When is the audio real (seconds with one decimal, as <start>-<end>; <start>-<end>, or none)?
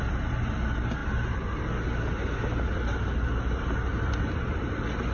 0.0-5.1